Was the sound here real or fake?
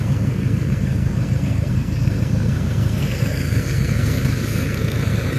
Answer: fake